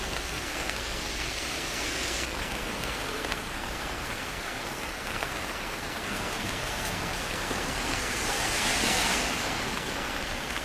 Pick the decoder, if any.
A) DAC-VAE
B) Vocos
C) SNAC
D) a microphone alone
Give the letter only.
C